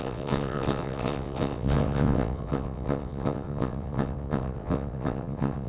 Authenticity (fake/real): fake